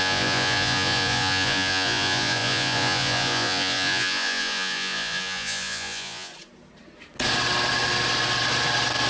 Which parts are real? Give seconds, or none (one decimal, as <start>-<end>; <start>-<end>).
6.3-9.1